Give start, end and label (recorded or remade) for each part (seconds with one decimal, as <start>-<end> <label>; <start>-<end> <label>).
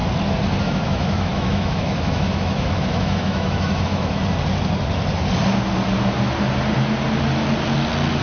0.0-0.6 recorded; 0.6-4.2 remade; 4.2-8.2 recorded